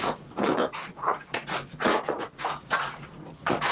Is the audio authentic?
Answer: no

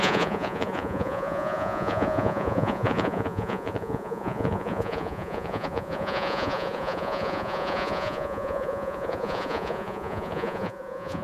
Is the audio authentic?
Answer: no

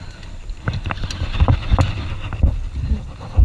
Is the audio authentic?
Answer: yes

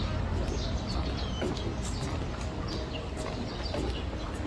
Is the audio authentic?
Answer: yes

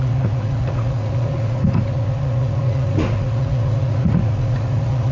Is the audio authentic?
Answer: no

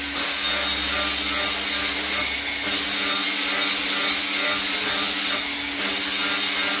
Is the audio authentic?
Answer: yes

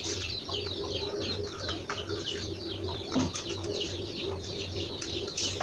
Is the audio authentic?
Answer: yes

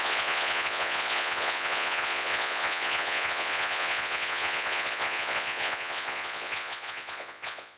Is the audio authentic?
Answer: no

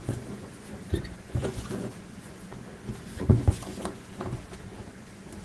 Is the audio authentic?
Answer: no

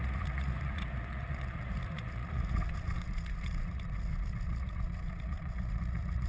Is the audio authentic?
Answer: no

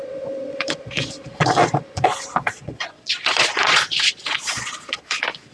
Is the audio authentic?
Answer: no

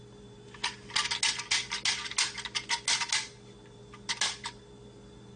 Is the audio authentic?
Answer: yes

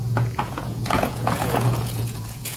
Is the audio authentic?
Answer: no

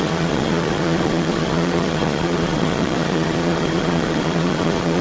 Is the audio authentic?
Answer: no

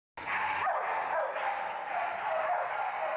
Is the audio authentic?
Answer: yes